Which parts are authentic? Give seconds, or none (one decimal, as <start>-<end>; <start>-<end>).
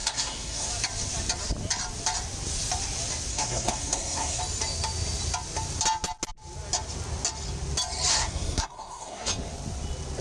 0.7-3.3; 4.4-8.1; 9.3-10.2